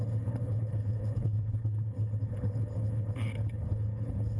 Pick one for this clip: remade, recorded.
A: remade